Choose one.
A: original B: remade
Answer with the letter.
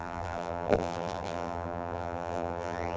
B